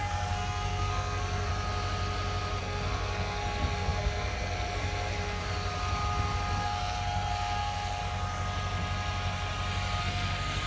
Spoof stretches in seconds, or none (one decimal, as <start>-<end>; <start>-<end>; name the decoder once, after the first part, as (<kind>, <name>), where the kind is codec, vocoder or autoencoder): 0.0-1.5 (codec, SNAC); 2.6-5.4; 6.6-8.0; 10.0-10.7